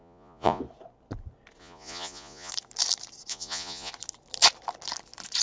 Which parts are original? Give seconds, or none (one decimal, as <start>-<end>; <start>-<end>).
0.6-1.6; 2.5-3.3; 3.9-5.4